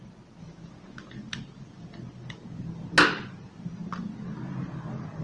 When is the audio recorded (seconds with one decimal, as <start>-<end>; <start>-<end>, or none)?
0.0-5.2